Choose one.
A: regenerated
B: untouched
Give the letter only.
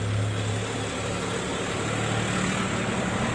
B